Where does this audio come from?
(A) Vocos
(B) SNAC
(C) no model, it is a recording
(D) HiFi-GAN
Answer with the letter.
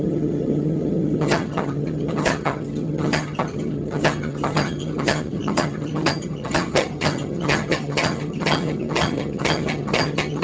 D